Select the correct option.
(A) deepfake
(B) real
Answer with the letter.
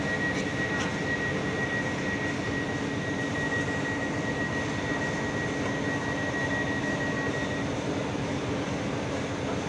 B